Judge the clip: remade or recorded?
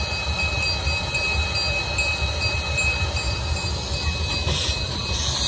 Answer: recorded